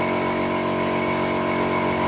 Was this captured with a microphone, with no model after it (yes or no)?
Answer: yes